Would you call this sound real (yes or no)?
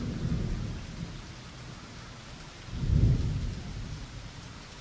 yes